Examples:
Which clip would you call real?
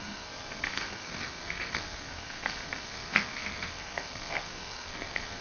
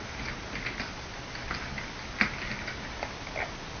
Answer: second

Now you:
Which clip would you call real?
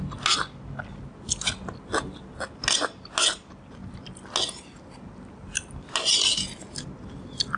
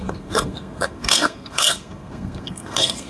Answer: first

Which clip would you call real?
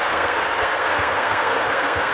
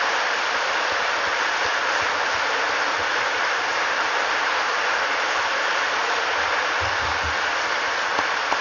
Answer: second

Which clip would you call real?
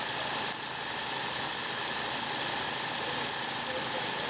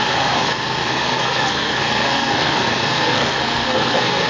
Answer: first